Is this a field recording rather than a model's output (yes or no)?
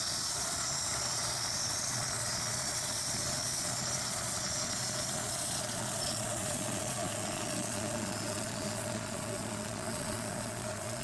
no